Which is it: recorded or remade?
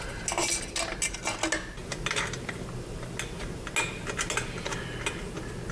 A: recorded